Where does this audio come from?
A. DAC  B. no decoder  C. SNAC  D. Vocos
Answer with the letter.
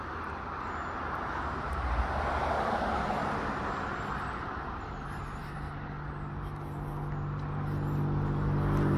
B